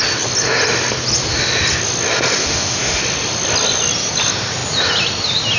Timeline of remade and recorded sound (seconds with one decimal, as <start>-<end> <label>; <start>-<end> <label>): 0.0-2.4 recorded; 2.4-3.0 remade; 3.0-5.6 recorded